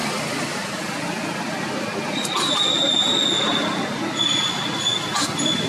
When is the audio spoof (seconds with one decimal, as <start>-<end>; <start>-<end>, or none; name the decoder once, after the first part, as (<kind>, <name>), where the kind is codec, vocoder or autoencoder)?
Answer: none